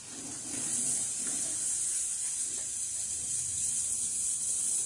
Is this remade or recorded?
recorded